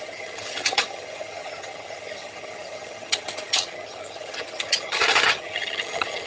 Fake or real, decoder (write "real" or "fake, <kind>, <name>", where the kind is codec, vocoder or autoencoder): fake, vocoder, HiFi-GAN